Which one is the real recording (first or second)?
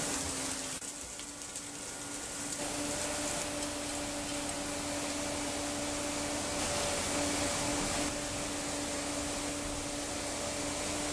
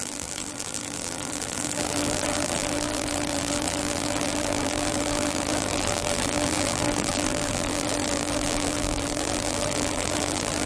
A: first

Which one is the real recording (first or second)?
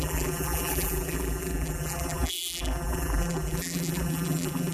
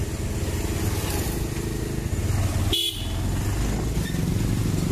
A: second